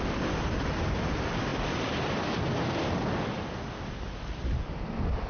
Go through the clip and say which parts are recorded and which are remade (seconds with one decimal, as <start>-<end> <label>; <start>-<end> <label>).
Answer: 0.0-5.3 recorded